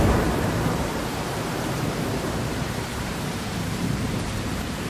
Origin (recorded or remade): remade